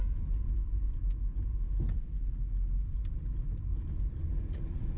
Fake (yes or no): no